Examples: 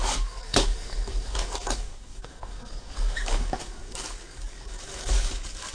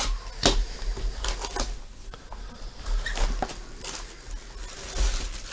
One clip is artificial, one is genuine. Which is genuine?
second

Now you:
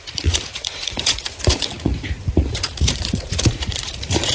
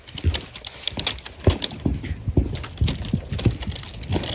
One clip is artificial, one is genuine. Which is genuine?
second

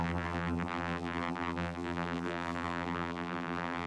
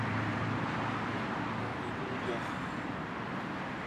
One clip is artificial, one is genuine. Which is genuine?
second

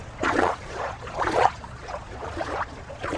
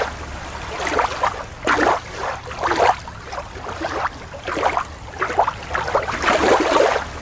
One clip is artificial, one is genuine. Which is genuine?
second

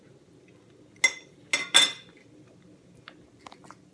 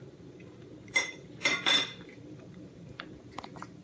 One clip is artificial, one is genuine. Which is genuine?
first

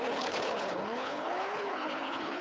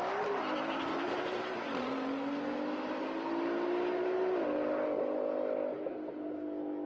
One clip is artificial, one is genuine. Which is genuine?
second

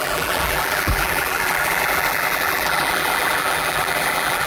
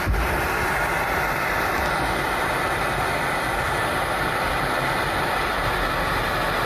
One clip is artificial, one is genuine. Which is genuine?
second